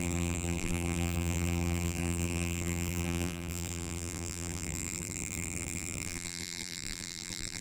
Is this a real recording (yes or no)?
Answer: no